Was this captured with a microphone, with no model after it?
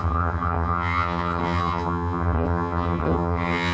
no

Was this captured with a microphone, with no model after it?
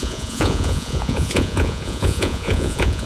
no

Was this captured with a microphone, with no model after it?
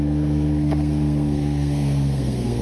no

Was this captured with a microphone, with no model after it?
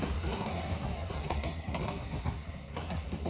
no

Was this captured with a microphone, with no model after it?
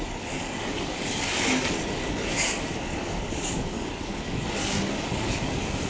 no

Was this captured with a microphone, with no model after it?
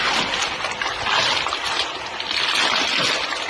yes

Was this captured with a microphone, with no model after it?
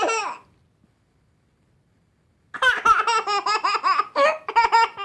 yes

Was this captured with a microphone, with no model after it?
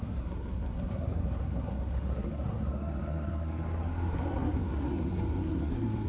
no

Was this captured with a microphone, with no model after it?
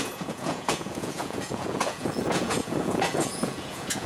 no